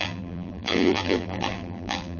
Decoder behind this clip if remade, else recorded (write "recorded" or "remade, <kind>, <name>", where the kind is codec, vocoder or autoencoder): remade, vocoder, BigVGAN v2